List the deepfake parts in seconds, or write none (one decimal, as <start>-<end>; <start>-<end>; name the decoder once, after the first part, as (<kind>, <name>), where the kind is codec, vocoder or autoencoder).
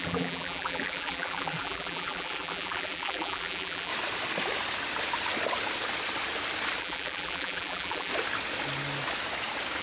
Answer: 0.0-3.9 (vocoder, BigVGAN v2); 6.8-8.1